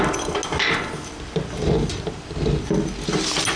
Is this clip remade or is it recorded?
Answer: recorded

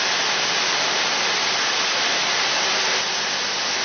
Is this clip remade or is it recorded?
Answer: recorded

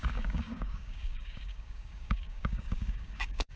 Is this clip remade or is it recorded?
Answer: remade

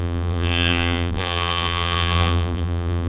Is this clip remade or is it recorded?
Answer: remade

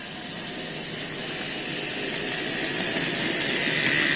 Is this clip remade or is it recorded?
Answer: recorded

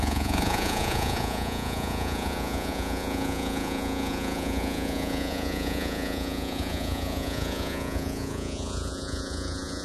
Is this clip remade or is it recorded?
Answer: remade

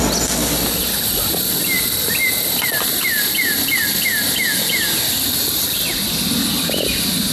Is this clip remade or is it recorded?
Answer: recorded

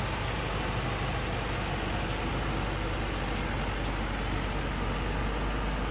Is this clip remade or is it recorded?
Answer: recorded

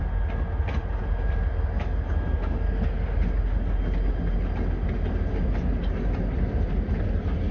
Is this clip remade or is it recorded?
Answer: recorded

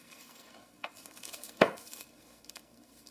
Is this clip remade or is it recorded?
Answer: remade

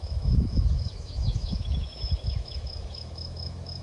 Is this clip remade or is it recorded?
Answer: remade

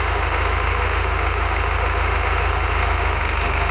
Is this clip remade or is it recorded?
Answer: remade